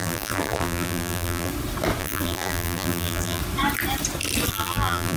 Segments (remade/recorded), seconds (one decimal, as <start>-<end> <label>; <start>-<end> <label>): 0.0-1.5 remade; 1.5-2.0 recorded; 2.0-3.4 remade; 3.4-4.5 recorded; 4.5-5.2 remade